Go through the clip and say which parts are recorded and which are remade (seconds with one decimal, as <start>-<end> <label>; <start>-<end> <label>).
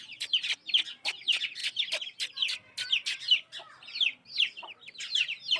0.0-5.6 recorded